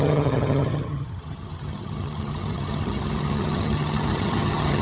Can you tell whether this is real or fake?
fake